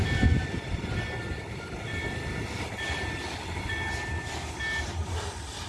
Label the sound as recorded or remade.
recorded